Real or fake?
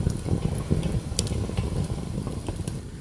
real